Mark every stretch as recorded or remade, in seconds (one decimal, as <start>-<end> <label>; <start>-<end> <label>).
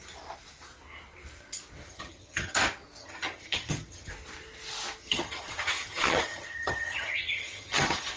0.0-1.9 recorded; 1.9-2.5 remade; 2.5-3.0 recorded; 3.0-4.1 remade; 4.1-5.0 recorded; 5.0-8.2 remade